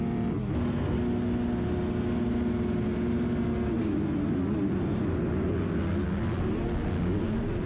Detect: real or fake real